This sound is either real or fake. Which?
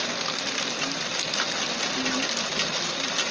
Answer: real